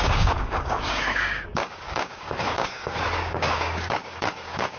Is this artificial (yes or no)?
yes